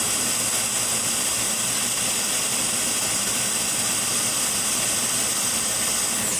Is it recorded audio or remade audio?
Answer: remade